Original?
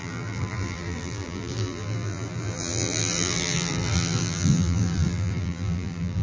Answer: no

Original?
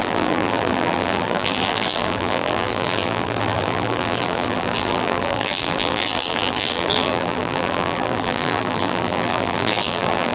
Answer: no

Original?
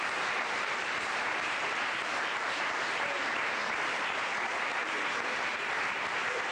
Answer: no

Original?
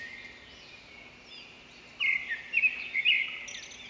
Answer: yes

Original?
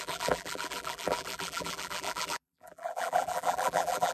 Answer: no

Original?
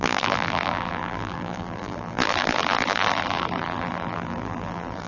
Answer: no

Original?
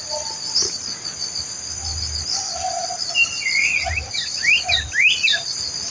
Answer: no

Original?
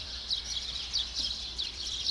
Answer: no